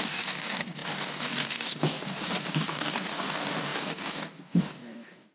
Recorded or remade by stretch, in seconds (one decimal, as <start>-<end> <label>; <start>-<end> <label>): 0.0-5.3 remade